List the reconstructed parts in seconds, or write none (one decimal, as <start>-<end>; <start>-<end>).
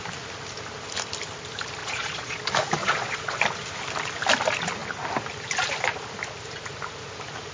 1.8-2.4; 2.8-3.4